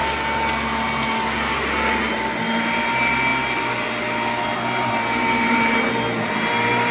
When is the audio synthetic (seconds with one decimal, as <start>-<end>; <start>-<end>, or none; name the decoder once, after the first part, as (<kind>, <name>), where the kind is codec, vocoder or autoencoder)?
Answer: none